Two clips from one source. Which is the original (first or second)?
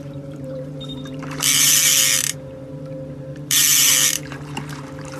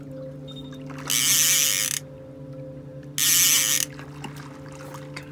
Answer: second